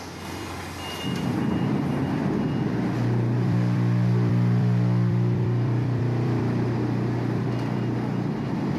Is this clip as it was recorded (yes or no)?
no